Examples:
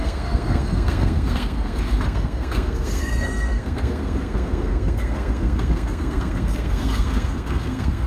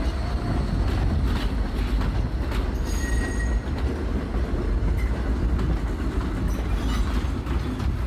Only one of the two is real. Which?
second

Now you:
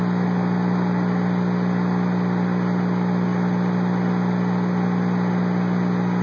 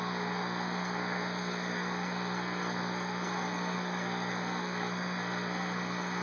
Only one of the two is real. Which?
first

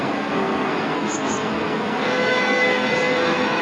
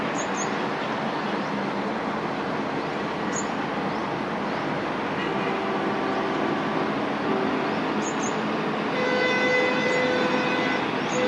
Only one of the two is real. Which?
second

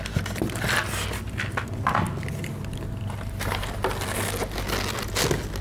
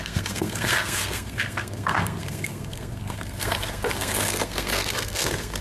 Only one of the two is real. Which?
first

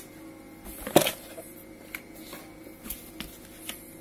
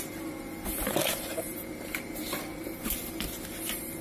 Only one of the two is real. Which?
first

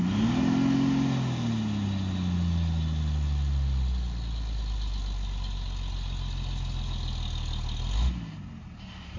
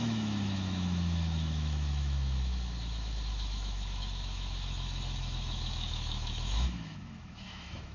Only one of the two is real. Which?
first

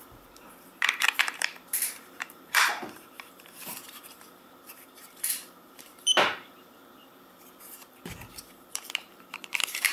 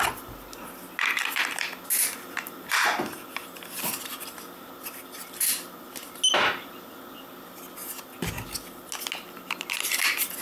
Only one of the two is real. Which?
second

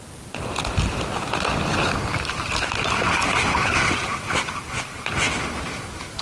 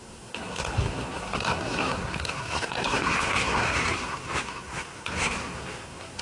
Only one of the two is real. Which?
first